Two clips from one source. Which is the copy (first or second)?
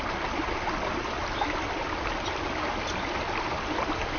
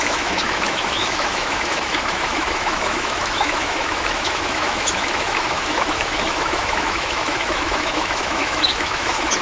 second